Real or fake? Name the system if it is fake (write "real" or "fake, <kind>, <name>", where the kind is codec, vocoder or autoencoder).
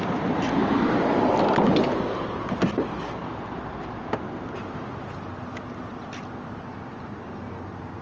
real